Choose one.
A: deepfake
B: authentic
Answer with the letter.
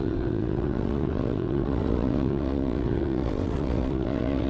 A